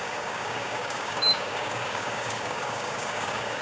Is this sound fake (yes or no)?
yes